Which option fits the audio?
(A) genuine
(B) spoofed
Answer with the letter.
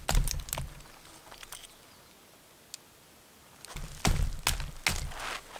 A